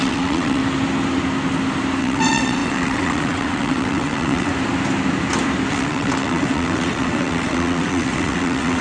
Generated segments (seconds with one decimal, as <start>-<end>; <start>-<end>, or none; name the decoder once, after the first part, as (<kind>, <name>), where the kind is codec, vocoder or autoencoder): 0.0-0.6 (vocoder, WaveNeXt); 2.0-4.5; 5.7-8.8